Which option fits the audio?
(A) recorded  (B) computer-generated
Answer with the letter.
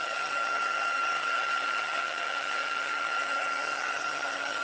B